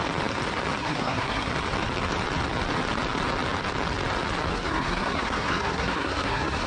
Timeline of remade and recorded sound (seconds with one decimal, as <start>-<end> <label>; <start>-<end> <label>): 0.0-0.8 recorded; 0.8-1.5 remade; 1.5-4.5 recorded; 4.5-6.7 remade